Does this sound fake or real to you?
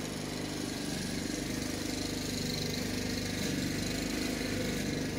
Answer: real